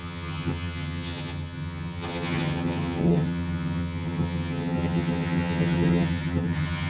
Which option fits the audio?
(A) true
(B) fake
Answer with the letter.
B